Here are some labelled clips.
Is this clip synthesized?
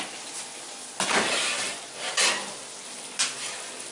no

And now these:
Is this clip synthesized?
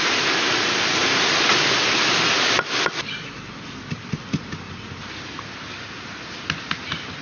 no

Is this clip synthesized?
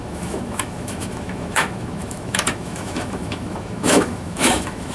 yes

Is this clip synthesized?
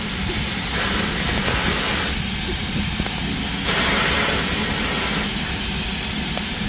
no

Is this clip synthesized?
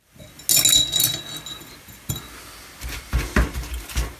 no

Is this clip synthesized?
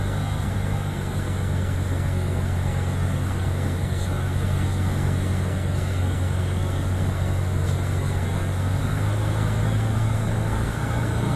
yes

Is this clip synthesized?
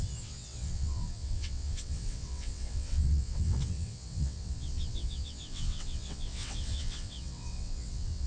yes